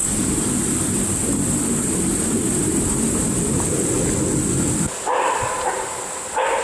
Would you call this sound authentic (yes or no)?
yes